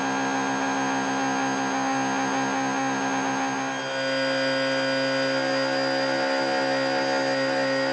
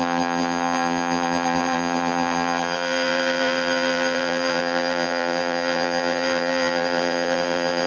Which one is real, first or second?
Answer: first